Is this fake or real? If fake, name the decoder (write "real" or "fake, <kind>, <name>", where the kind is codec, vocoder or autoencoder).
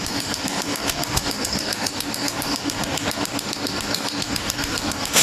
fake, codec, DAC